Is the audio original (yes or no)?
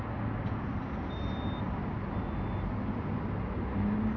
yes